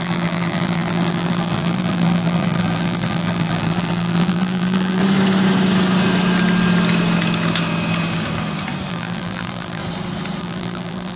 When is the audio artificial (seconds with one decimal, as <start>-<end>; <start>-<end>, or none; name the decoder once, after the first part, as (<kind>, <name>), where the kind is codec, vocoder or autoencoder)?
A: 0.0-5.0 (vocoder, BigVGAN v2); 8.9-9.8; 10.4-11.2